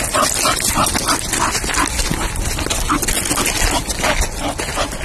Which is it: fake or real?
real